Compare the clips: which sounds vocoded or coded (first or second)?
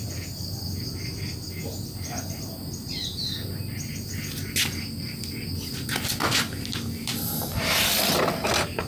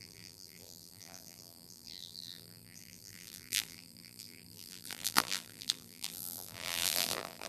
second